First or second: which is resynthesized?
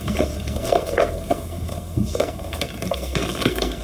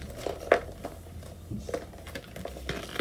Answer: first